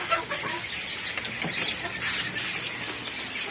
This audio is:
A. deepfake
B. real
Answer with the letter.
B